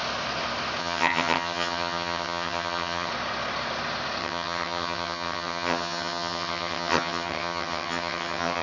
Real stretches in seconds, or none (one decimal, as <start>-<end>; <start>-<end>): 0.0-0.8; 3.1-4.2